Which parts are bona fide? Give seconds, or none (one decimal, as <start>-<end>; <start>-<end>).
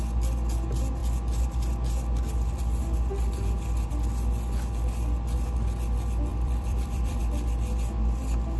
0.0-6.3; 7.2-8.6